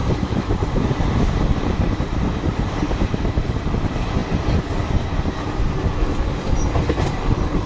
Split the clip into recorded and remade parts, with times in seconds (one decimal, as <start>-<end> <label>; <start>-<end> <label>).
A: 0.0-4.2 remade; 4.2-6.9 recorded; 6.9-7.7 remade